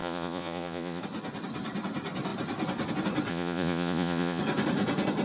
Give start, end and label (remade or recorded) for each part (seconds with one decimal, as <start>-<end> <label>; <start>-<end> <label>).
0.0-1.0 remade; 1.0-3.3 recorded; 3.3-4.4 remade; 4.4-5.2 recorded